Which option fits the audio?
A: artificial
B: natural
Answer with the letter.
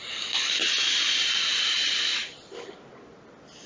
B